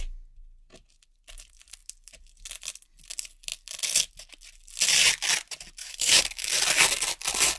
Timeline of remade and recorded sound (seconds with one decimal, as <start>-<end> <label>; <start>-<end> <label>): 0.0-5.8 recorded; 5.8-6.5 remade; 6.5-7.6 recorded